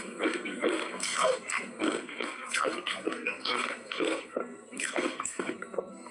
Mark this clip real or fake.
fake